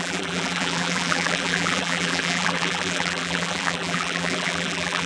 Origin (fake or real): fake